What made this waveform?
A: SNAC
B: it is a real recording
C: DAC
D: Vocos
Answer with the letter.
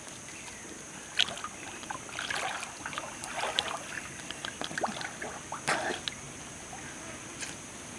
B